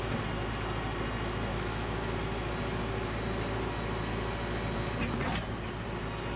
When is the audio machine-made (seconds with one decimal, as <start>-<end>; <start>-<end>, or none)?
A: 1.5-2.1